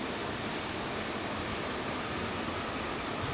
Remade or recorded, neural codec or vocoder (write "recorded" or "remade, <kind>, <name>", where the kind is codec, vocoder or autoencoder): recorded